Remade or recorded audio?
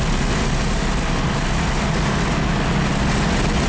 recorded